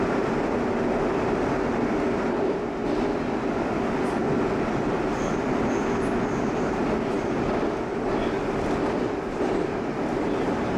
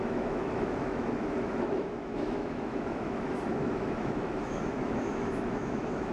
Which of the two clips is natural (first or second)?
first